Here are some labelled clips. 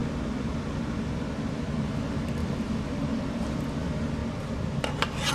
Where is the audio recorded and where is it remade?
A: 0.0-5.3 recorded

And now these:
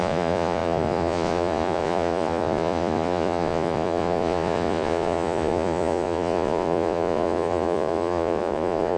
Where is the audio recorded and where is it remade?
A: 0.0-9.0 remade

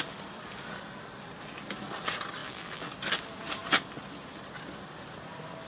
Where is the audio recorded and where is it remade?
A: 0.0-2.4 recorded; 2.4-2.9 remade; 2.9-5.7 recorded

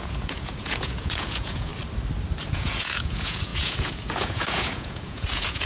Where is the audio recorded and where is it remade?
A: 0.0-1.7 remade; 1.7-2.5 recorded; 2.5-5.7 remade

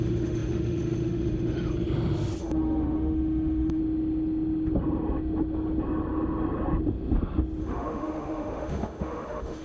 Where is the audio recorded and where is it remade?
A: 0.0-1.7 remade; 1.7-2.4 recorded; 2.4-3.8 remade; 3.8-7.6 recorded; 7.6-9.6 remade

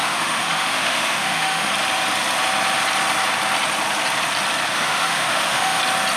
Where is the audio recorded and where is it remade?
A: 0.0-1.7 remade; 1.7-4.7 recorded; 4.7-5.8 remade; 5.8-6.2 recorded

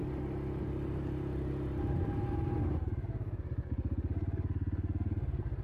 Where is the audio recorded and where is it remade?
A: 0.0-5.6 recorded